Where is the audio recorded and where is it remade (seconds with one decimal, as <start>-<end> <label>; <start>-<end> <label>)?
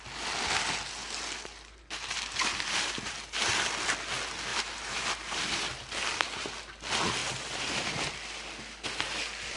0.0-1.0 recorded; 1.0-3.5 remade; 3.5-4.5 recorded; 4.5-5.4 remade; 5.4-7.2 recorded; 7.2-8.0 remade; 8.0-9.6 recorded